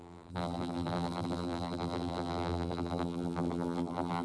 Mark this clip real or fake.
fake